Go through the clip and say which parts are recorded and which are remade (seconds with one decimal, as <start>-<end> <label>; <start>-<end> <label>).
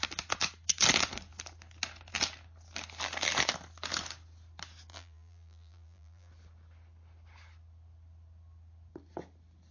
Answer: 0.0-4.9 recorded; 4.9-6.3 remade; 6.3-9.7 recorded